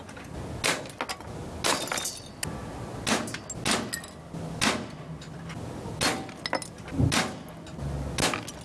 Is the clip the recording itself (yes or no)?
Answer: yes